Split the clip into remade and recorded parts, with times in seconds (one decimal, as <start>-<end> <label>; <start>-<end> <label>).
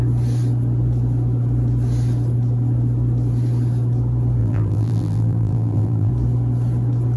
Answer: 0.0-4.4 recorded; 4.4-6.1 remade; 6.1-7.2 recorded